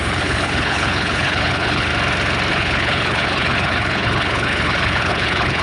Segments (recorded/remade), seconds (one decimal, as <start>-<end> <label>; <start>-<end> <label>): 0.0-1.9 remade; 1.9-2.5 recorded; 2.5-5.6 remade